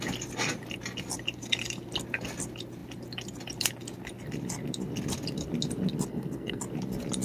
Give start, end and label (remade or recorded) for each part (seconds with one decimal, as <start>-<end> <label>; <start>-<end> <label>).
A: 0.0-6.1 recorded; 6.1-6.6 remade; 6.6-7.2 recorded